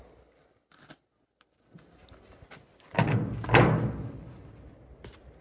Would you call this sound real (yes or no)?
yes